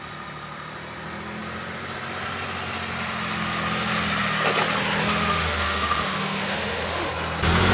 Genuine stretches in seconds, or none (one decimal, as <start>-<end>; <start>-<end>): 0.0-5.0; 7.1-7.7